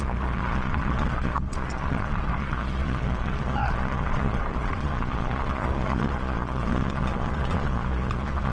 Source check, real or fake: fake